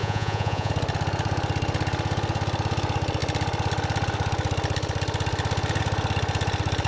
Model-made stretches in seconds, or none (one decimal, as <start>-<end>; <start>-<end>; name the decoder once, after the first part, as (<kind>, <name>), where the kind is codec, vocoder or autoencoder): 0.0-0.7 (vocoder, Vocos)